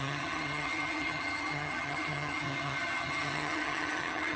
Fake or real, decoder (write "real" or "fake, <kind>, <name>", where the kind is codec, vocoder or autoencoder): fake, vocoder, HiFi-GAN